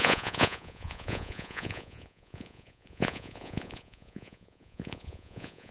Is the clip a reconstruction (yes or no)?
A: yes